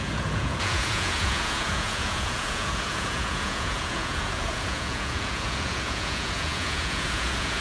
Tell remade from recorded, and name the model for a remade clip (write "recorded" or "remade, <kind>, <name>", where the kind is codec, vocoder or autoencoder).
remade, vocoder, Vocos